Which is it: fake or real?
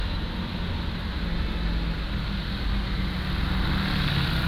real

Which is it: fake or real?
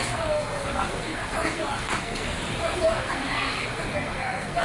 fake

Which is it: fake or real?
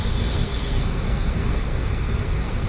fake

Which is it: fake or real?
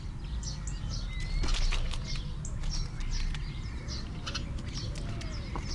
real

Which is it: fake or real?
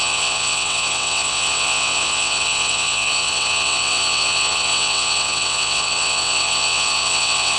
fake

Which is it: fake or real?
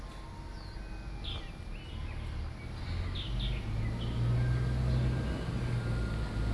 real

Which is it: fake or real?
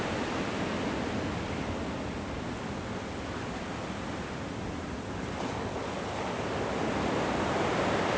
real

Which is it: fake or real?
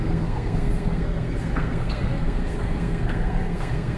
fake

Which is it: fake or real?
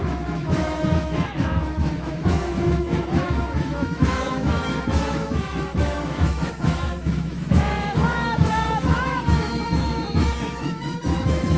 fake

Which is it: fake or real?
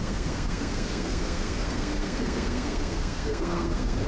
fake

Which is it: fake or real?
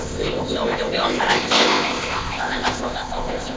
fake